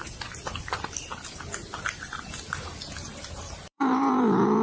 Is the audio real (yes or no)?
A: no